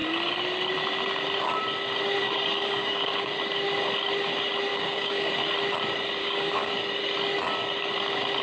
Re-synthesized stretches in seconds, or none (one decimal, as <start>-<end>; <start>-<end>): 2.2-3.3; 4.7-5.3; 6.2-6.7